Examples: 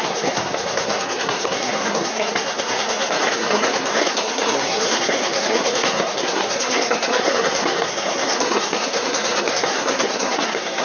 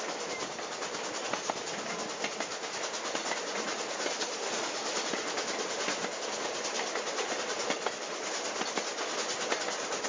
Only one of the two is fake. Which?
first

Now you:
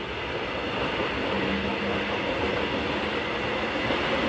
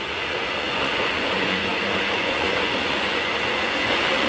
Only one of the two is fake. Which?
second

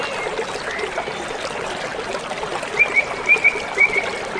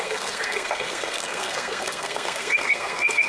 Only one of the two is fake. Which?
second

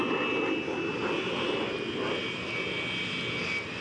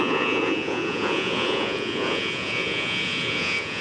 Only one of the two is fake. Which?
second